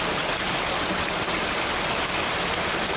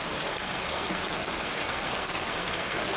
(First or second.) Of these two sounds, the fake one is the second